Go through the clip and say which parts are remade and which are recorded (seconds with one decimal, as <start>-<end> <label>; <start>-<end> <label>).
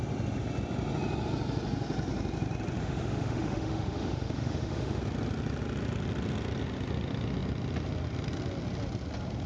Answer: 0.0-2.8 recorded; 2.8-5.0 remade; 5.0-9.5 recorded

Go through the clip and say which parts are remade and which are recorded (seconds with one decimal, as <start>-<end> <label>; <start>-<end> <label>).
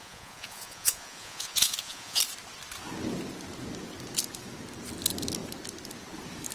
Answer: 0.0-2.2 remade; 2.2-6.5 recorded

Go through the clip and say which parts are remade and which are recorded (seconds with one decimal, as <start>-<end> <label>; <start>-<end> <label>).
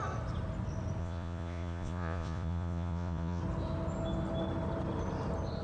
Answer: 0.0-1.0 recorded; 1.0-3.4 remade; 3.4-5.6 recorded